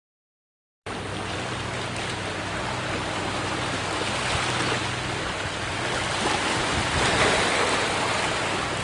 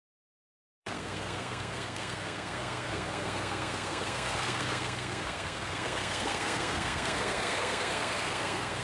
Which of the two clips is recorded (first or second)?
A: first